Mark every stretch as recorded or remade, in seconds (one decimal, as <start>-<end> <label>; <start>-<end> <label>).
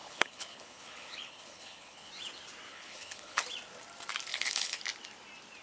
0.0-2.1 remade; 2.1-2.7 recorded; 2.7-3.4 remade; 3.4-4.3 recorded; 4.3-4.8 remade; 4.8-5.6 recorded